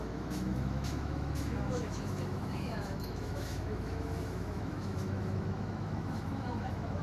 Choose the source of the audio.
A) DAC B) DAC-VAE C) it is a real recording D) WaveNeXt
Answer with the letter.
B